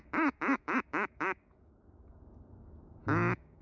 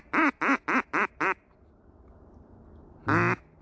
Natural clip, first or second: second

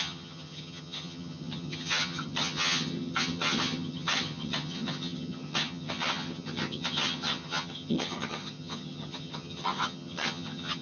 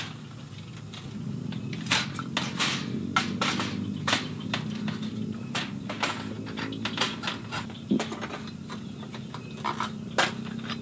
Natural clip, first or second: second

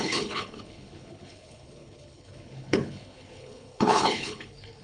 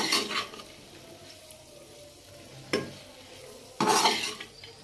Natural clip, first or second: second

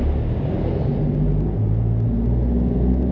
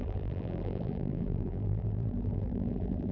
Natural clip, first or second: first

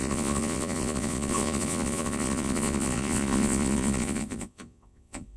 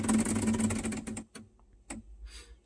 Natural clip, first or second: second